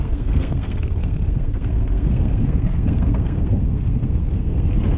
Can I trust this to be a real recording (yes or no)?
no